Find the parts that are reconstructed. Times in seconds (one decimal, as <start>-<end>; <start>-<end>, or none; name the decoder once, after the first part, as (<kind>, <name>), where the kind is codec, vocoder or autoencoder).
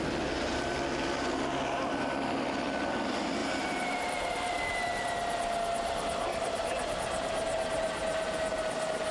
3.4-4.8 (vocoder, BigVGAN v2)